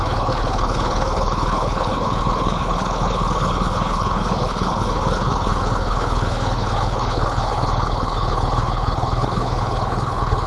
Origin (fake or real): fake